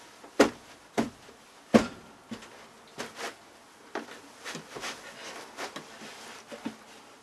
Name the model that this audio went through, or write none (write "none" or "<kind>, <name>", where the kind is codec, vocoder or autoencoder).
none